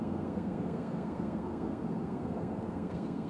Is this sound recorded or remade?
remade